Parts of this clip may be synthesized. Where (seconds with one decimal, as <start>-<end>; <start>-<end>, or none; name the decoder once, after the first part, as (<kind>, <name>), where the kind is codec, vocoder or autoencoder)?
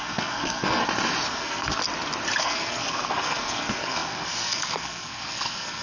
0.0-0.8 (codec, SNAC); 1.3-1.8; 2.4-5.8